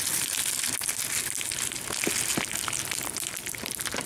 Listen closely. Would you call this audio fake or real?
real